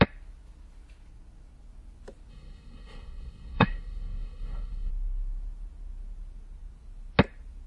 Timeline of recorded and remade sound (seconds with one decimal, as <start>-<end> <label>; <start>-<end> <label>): 0.0-2.3 recorded; 2.3-4.9 remade; 4.9-7.7 recorded